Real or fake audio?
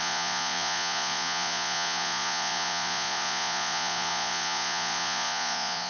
fake